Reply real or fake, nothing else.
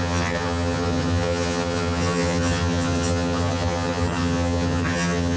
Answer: fake